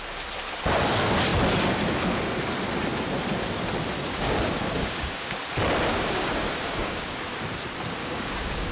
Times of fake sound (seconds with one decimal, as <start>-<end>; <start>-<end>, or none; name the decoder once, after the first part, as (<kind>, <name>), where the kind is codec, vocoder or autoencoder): 4.1-5.4 (codec, DAC); 5.9-7.2; 8.0-8.7